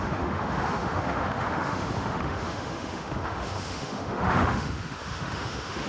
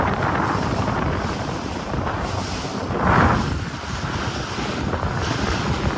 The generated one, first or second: first